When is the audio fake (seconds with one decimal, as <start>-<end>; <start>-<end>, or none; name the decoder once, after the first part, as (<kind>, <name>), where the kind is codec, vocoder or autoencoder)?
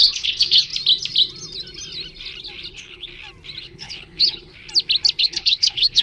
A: 0.0-0.7 (codec, HILCodec); 2.7-3.1; 3.6-4.5; 5.2-6.0